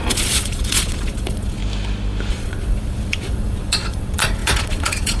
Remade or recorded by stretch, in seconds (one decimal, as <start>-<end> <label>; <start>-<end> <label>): 0.0-1.6 remade; 1.6-2.3 recorded; 2.3-5.2 remade